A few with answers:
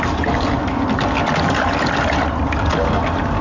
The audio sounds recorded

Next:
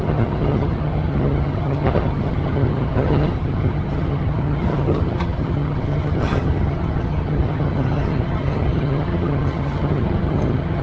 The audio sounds remade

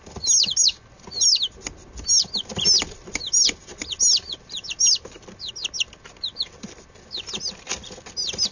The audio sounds recorded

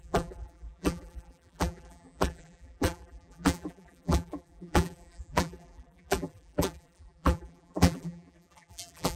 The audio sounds remade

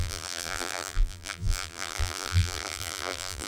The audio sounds remade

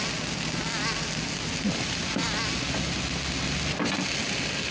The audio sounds recorded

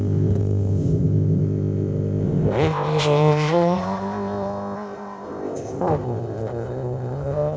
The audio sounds remade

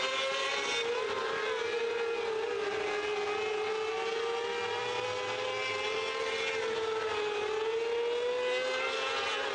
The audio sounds recorded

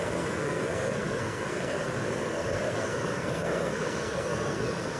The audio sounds remade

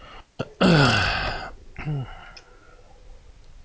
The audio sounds recorded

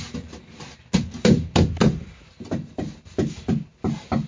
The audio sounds recorded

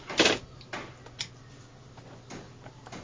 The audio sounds recorded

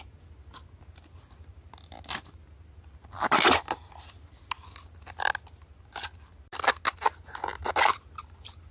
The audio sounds recorded